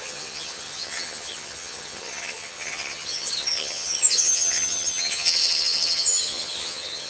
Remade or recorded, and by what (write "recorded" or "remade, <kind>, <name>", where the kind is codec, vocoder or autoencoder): remade, vocoder, HiFi-GAN